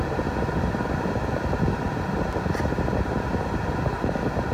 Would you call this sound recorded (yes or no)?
yes